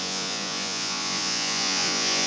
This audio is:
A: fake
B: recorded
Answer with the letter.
A